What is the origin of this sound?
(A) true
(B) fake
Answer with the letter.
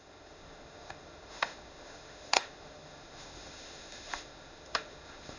B